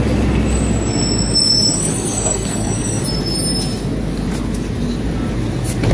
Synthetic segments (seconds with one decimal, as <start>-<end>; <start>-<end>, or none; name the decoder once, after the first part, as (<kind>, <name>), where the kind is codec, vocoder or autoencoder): 1.7-3.0 (codec, SNAC)